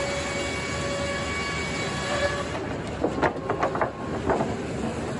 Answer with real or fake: real